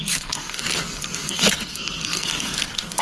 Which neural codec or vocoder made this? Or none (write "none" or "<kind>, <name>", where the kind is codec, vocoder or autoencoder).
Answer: codec, SNAC